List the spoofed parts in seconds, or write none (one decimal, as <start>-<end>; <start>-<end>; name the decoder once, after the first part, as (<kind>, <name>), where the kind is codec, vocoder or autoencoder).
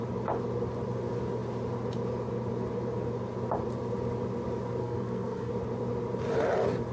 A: 4.8-5.5 (codec, SNAC)